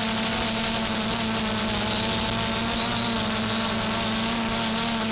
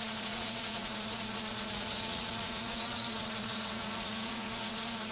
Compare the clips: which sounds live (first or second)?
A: first